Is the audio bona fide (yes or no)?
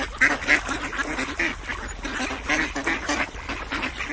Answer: yes